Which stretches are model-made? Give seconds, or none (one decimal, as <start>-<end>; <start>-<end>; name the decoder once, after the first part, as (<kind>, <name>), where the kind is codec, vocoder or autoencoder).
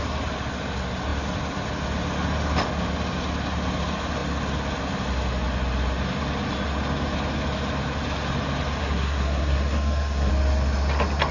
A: 8.8-10.3 (codec, SNAC)